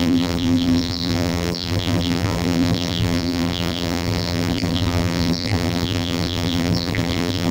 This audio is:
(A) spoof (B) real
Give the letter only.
A